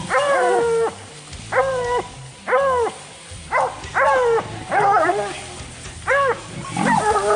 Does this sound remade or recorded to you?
recorded